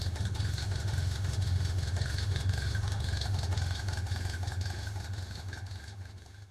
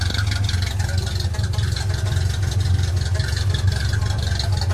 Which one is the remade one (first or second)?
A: first